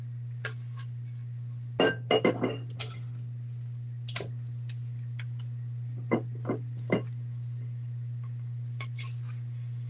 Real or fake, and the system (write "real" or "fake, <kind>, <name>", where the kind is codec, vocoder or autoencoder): real